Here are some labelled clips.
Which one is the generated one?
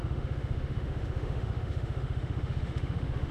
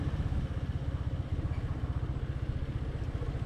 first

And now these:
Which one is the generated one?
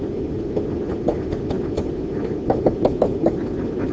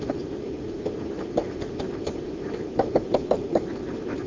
second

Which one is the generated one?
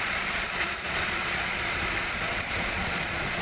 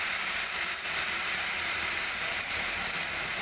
first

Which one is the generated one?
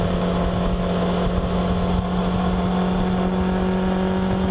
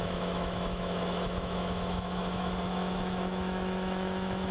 second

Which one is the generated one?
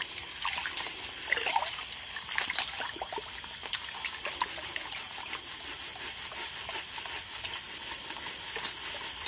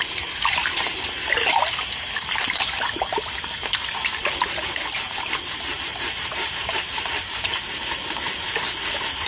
second